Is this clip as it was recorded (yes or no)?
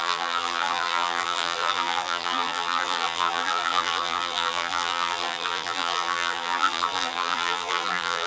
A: no